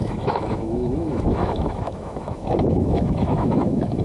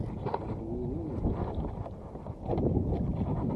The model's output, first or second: first